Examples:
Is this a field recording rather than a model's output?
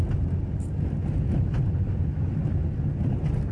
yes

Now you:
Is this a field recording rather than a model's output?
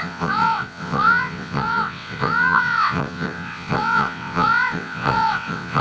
no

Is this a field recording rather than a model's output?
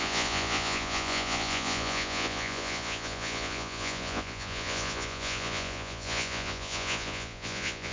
no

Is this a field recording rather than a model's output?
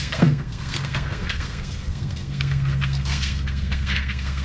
no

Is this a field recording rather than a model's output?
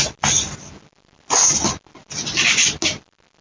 yes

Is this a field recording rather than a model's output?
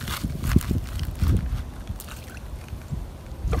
yes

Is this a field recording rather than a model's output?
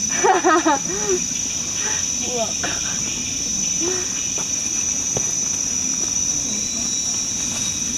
yes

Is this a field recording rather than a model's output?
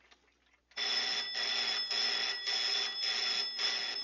yes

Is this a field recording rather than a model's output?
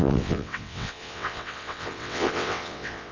no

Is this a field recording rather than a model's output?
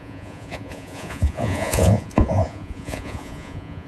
no